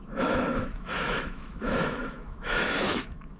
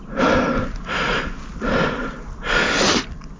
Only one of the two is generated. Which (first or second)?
first